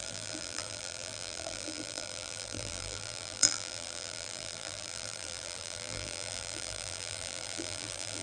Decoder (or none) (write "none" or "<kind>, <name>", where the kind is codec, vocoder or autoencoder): vocoder, BigVGAN v2